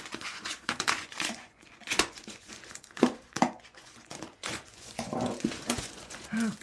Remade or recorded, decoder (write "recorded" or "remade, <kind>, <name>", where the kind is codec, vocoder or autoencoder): remade, vocoder, Vocos